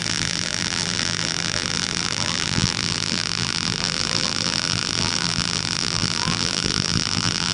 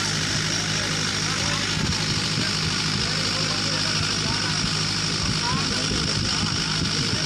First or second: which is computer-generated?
first